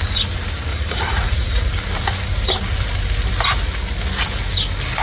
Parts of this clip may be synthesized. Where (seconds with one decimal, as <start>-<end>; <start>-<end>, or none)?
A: 0.7-1.7